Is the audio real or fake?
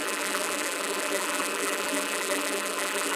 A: fake